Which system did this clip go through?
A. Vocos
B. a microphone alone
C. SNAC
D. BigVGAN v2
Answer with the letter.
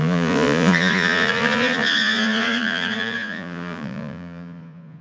A